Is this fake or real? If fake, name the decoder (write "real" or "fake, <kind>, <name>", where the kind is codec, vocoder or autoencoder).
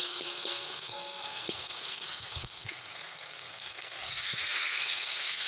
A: fake, codec, SNAC